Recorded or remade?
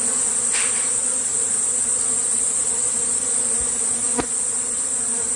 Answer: recorded